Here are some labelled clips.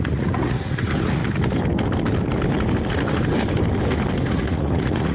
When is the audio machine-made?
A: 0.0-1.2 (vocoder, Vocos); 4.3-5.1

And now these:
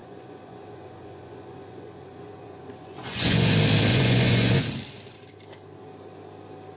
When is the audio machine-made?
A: 0.0-3.5 (vocoder, Vocos); 3.9-4.6

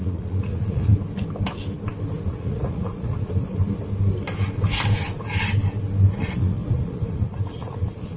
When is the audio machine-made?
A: 0.0-0.9 (vocoder, Vocos); 2.3-3.6; 6.1-8.2

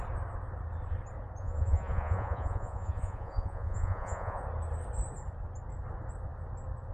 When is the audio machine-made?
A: 1.4-4.4 (vocoder, Vocos)

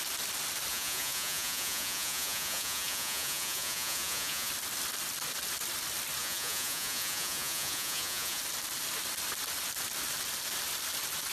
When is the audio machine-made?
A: 0.7-4.5 (vocoder, Vocos); 6.2-8.4

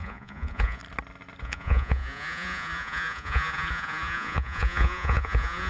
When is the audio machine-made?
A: 0.0-0.8 (vocoder, Vocos); 1.4-5.7